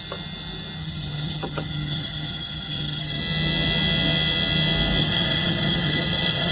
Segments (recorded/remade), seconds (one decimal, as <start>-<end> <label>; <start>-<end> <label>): 0.0-0.8 recorded; 0.8-3.2 remade; 3.2-5.0 recorded; 5.0-6.5 remade